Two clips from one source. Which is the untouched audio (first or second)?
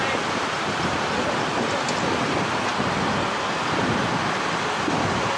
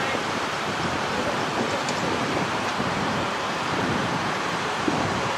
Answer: first